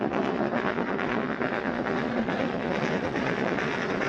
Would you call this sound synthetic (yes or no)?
yes